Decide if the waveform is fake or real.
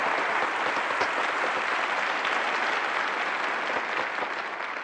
real